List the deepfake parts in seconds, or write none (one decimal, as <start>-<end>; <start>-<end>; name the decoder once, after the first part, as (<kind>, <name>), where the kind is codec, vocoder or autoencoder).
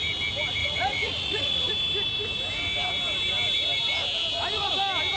0.6-1.7 (vocoder, Vocos)